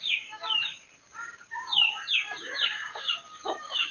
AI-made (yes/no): yes